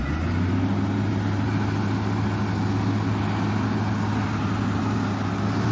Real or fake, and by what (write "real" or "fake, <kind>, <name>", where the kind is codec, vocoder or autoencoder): real